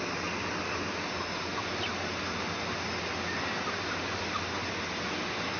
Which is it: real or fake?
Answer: real